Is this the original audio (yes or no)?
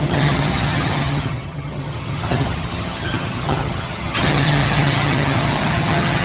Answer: no